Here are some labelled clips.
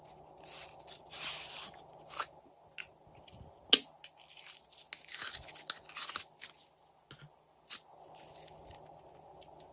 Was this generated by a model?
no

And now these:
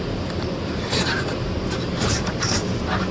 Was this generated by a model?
yes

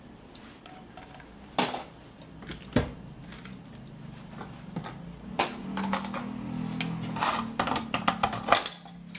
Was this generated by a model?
no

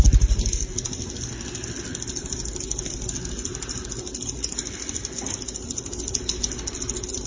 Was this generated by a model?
no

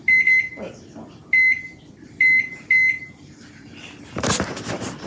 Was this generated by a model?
no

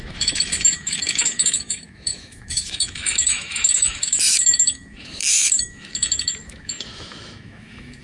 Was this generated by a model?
yes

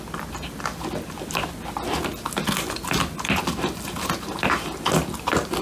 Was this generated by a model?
no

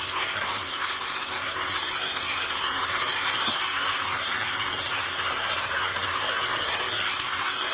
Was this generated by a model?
yes